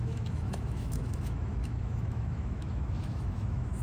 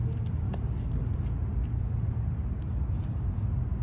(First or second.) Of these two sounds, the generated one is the first